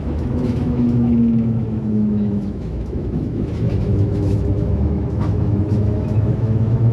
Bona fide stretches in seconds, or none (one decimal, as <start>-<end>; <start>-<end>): none